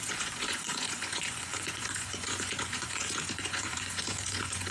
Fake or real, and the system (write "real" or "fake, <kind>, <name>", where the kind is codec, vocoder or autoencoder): fake, vocoder, Vocos